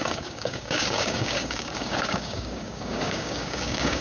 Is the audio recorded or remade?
remade